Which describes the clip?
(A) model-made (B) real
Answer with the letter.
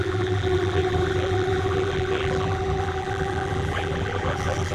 A